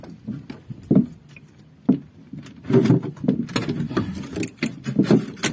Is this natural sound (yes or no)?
yes